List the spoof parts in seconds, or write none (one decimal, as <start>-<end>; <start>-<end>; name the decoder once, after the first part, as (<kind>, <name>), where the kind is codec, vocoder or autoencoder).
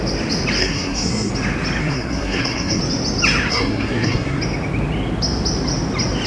0.6-1.3 (codec, SNAC); 1.8-2.8; 3.5-4.4